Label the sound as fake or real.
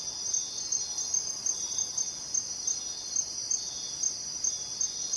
real